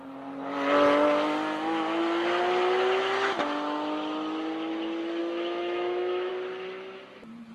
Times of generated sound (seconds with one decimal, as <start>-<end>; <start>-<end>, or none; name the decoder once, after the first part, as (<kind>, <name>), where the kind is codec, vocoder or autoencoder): 5.2-6.3 (autoencoder, DAC-VAE)